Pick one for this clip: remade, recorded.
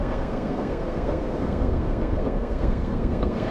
remade